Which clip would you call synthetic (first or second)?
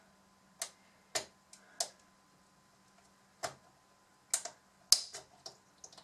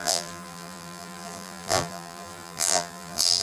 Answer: second